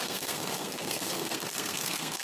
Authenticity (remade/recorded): remade